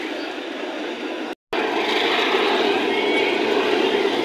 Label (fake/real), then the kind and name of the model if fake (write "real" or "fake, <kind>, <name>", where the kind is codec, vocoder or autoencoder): real